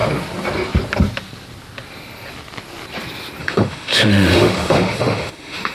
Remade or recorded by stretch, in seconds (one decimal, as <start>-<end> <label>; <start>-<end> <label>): 0.0-3.4 recorded; 3.4-5.7 remade